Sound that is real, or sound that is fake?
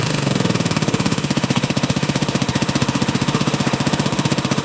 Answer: fake